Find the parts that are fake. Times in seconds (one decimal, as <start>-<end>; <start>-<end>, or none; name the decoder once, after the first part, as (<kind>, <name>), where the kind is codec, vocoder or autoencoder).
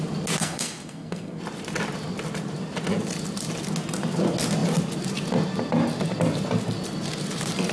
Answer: 0.4-1.4 (codec, SNAC)